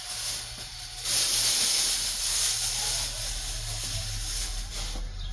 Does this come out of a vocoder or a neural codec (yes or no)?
no